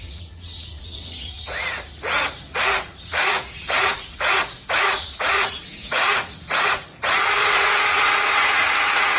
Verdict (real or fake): fake